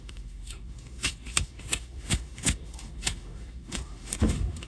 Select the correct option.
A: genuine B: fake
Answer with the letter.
B